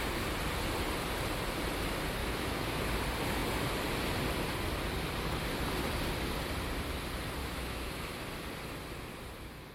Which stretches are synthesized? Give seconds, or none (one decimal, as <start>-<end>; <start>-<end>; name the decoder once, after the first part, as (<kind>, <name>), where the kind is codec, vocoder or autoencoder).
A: 2.2-2.9 (autoencoder, DAC-VAE); 7.4-8.2